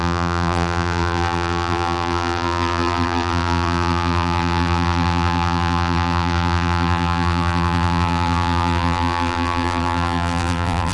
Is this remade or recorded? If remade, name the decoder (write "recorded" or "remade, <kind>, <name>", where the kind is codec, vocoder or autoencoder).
remade, vocoder, BigVGAN v2